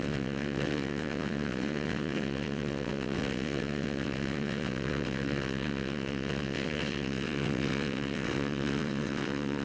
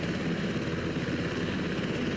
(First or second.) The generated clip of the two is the first